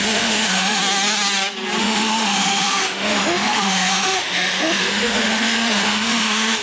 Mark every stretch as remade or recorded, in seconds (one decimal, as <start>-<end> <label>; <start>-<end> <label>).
0.0-0.8 remade; 0.8-1.8 recorded; 1.8-6.6 remade